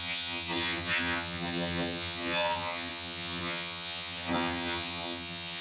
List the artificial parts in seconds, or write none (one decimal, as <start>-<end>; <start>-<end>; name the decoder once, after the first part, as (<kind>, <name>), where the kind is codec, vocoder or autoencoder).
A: 0.0-5.6 (vocoder, HiFi-GAN)